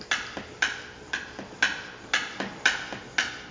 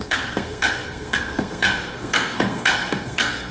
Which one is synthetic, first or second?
second